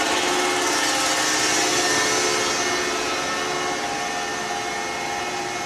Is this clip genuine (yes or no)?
yes